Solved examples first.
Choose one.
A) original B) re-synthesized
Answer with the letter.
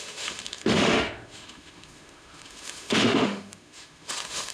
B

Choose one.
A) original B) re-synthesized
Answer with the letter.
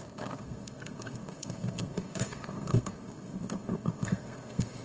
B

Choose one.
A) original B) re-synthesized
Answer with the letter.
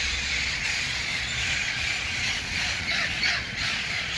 B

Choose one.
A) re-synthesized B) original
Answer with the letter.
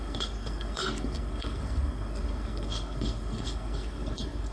A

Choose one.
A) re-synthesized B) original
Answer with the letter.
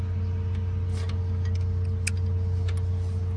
B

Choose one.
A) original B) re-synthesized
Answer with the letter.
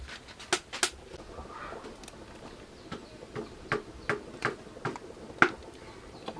A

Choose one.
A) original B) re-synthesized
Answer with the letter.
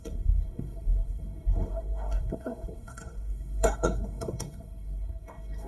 B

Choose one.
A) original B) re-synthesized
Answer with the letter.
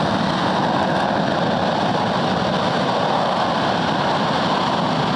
A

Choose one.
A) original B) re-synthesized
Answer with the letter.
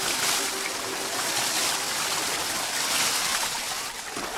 A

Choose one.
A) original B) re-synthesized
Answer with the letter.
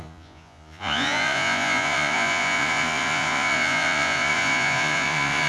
B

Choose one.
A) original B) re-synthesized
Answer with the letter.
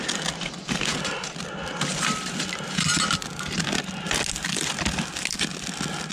A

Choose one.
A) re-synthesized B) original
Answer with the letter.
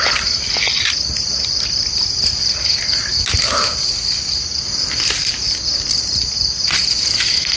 B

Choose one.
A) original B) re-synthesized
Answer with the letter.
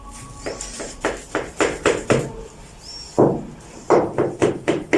B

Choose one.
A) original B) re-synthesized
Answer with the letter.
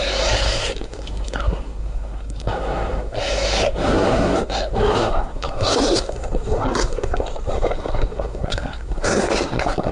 B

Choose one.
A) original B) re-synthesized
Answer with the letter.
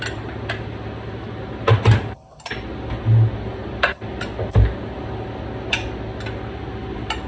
A